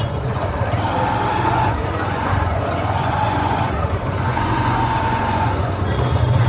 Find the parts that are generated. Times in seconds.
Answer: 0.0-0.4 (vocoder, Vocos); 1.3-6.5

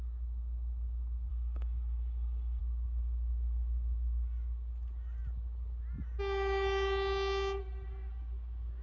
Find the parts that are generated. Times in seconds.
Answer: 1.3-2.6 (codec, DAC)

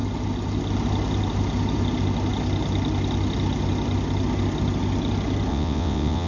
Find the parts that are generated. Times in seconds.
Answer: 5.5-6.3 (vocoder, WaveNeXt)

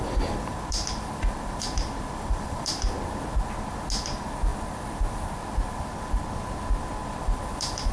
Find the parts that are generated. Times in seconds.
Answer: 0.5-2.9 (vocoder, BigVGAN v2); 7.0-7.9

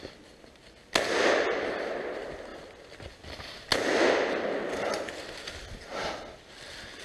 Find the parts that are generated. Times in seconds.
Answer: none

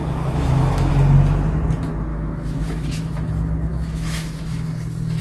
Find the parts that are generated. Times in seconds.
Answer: 0.0-0.9 (autoencoder, DAC-VAE); 2.1-3.3; 3.7-4.7